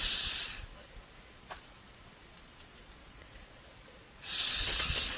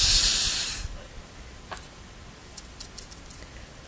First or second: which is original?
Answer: second